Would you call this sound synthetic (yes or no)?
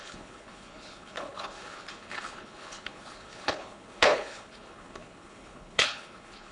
yes